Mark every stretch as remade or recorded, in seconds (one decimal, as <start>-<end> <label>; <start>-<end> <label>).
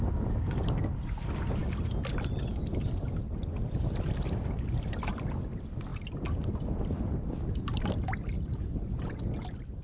0.0-9.8 recorded